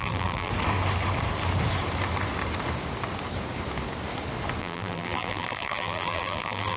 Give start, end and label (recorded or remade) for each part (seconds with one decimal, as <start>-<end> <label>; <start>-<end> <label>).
0.0-0.5 remade; 0.5-4.6 recorded; 4.6-6.8 remade